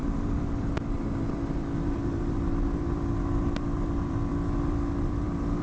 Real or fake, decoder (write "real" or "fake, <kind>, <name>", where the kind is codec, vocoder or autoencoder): fake, vocoder, BigVGAN v2